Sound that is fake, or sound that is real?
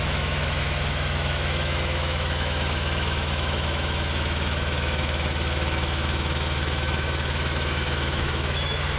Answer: fake